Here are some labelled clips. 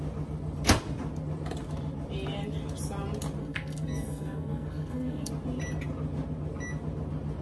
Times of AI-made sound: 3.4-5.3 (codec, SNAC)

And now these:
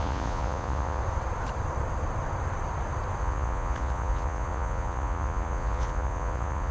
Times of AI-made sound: 0.0-1.0 (vocoder, Vocos); 3.2-6.7